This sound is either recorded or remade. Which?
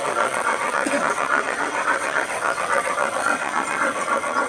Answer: remade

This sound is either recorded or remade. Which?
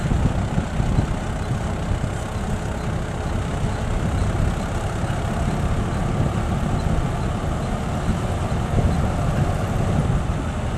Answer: recorded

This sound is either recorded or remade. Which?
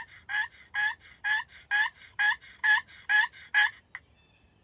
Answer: recorded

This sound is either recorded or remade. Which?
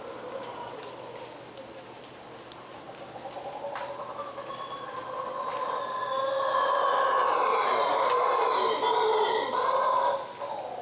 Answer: recorded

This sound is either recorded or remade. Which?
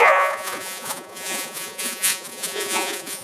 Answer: remade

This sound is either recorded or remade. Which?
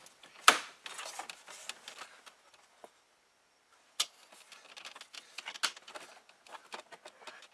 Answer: recorded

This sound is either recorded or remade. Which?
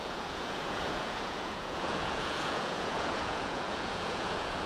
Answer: remade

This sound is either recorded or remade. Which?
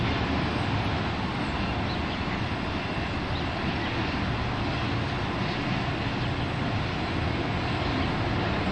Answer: recorded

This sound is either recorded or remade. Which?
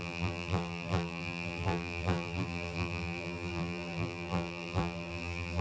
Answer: remade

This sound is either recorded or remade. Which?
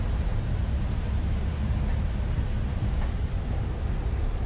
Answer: remade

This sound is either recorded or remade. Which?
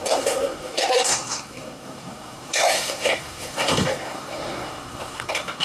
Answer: remade